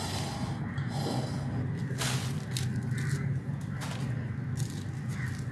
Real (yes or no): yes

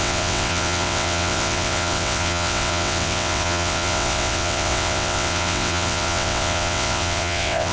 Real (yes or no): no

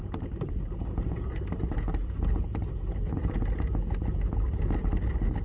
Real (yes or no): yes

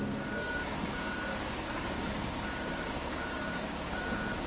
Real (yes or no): no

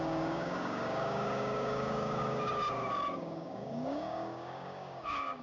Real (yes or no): no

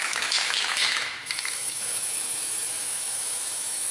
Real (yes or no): no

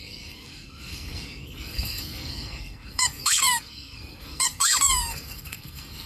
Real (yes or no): no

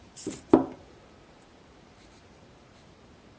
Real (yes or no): no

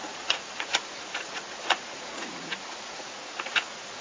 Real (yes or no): no